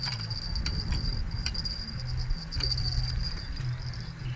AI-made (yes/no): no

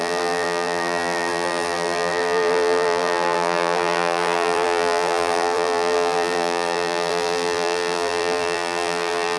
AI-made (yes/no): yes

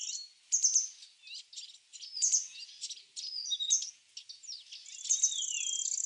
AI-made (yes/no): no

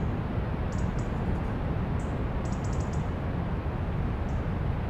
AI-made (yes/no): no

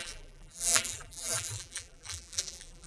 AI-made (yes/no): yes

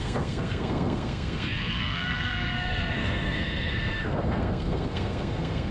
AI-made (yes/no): yes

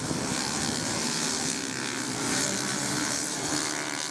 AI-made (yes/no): no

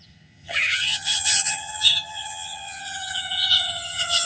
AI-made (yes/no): yes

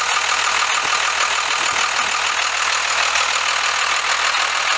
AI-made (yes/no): no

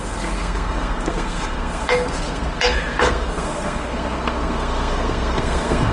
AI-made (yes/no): yes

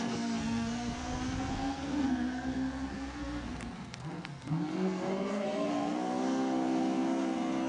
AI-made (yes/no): yes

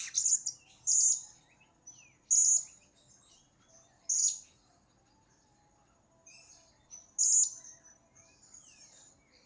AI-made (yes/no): no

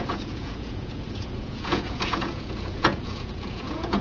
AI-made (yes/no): yes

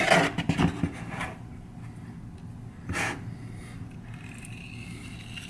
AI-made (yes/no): no